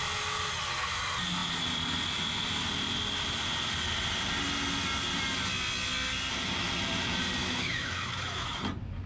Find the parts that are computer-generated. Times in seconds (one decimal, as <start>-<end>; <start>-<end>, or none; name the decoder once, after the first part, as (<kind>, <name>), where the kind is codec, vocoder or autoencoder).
7.4-8.6 (autoencoder, DAC-VAE)